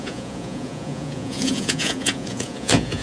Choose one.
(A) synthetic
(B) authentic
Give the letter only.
A